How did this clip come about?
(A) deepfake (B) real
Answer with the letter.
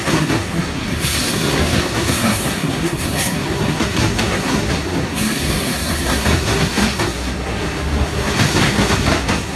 A